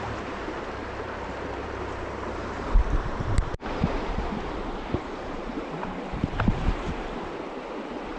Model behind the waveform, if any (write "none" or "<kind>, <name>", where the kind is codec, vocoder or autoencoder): vocoder, BigVGAN v2